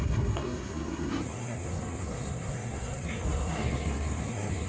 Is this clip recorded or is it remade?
remade